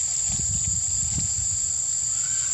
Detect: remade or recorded recorded